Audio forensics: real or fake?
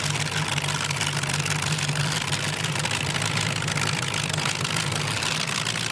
fake